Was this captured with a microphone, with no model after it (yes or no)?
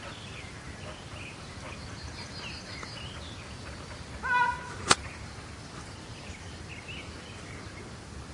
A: yes